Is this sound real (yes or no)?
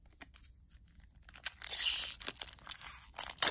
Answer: yes